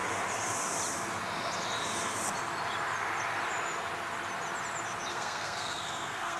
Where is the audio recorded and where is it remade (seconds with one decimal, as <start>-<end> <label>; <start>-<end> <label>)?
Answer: 0.0-5.1 recorded; 5.1-6.4 remade